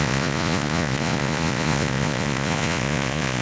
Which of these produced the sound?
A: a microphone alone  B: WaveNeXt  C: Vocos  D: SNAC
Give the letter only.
C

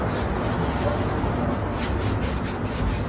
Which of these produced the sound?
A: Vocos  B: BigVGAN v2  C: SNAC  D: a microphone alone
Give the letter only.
D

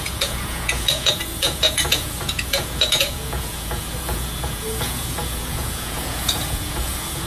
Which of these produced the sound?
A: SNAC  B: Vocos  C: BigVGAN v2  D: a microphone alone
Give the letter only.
B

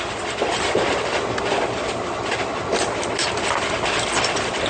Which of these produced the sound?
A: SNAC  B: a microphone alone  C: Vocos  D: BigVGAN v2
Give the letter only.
B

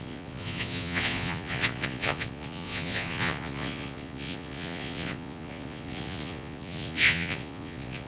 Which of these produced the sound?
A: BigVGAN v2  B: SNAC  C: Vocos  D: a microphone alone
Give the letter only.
C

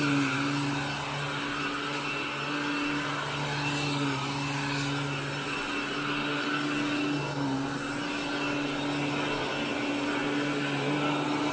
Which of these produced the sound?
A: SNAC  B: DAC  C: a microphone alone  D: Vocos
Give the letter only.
C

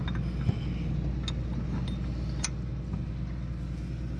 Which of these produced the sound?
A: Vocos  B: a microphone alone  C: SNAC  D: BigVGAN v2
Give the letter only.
B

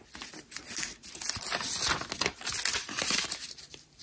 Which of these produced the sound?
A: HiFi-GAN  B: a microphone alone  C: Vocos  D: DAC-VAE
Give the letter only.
B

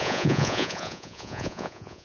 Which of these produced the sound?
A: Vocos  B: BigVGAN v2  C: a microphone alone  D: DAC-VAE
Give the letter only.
A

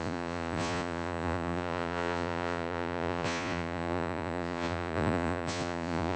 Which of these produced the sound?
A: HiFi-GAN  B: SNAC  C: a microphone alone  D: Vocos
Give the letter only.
D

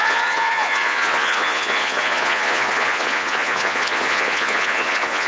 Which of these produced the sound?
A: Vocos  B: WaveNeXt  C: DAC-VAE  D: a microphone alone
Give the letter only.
A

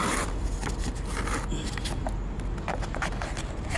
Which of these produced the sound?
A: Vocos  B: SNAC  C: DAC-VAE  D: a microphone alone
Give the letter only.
D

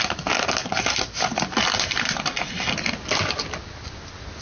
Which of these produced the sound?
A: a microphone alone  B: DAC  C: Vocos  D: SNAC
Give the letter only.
A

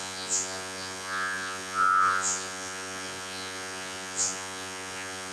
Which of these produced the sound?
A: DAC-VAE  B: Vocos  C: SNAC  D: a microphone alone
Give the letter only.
B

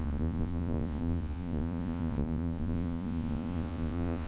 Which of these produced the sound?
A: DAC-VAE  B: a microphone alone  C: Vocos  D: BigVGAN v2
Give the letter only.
C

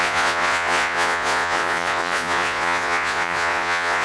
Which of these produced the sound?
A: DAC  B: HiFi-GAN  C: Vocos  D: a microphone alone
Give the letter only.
C